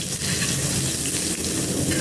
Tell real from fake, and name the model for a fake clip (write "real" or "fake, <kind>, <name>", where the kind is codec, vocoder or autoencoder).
real